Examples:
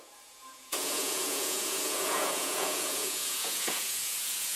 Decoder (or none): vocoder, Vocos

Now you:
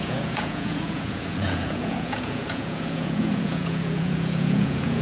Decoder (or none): vocoder, Vocos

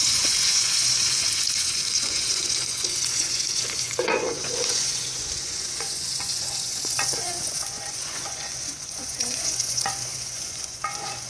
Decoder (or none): vocoder, Vocos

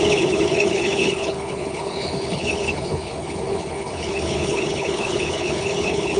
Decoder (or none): codec, HILCodec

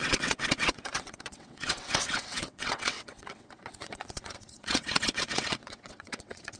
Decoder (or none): vocoder, WaveNeXt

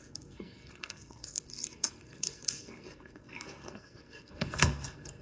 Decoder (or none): codec, SNAC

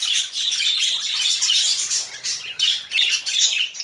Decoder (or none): vocoder, Vocos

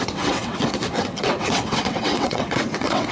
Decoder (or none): vocoder, WaveNeXt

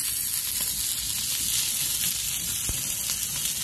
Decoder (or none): none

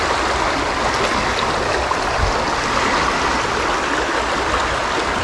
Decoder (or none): none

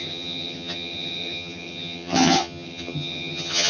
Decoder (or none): vocoder, HiFi-GAN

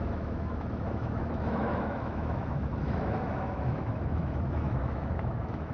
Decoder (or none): autoencoder, DAC-VAE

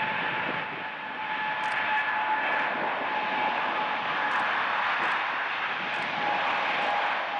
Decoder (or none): none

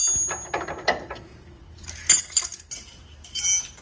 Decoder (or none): none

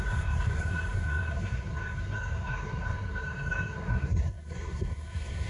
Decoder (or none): codec, SNAC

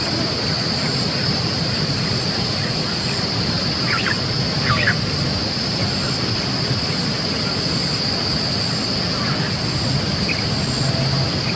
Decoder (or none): none